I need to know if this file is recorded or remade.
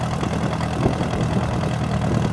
recorded